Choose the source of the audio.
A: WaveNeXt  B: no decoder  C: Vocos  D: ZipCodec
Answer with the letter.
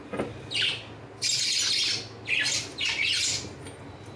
B